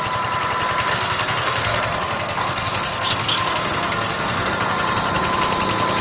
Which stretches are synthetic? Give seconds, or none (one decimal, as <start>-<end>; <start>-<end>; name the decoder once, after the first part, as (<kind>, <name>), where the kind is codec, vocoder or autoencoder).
0.9-4.5 (codec, SNAC)